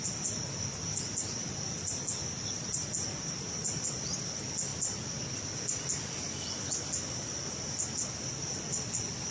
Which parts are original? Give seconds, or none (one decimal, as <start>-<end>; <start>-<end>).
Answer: 0.0-9.3